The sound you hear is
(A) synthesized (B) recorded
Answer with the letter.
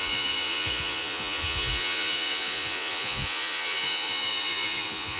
A